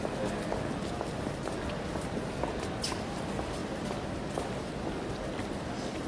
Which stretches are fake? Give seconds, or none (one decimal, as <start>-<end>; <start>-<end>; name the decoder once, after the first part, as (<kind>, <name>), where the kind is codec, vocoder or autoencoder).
none